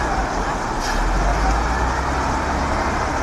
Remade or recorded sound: recorded